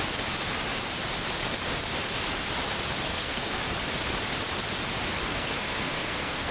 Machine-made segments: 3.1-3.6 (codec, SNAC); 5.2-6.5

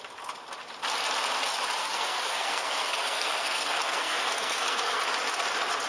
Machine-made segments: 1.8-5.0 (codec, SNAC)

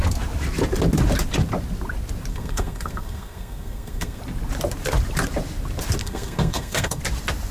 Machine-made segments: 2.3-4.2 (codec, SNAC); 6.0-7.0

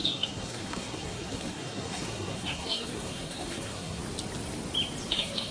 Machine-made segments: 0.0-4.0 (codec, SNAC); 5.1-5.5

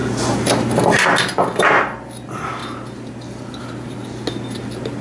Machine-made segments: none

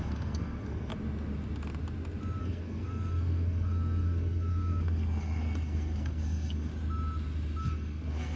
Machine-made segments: 0.0-0.9 (codec, SNAC); 2.4-6.7; 7.6-8.4